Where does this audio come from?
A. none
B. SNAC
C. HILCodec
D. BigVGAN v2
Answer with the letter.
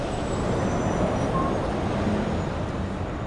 A